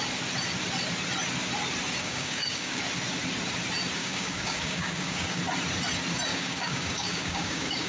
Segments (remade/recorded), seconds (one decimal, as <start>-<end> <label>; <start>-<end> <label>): 0.0-2.0 recorded; 2.0-2.8 remade; 2.8-4.0 recorded; 4.0-5.4 remade; 5.4-6.3 recorded; 6.3-7.9 remade